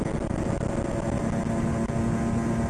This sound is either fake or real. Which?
real